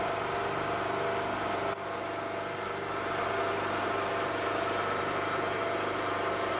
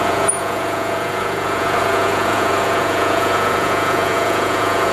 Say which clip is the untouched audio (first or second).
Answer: first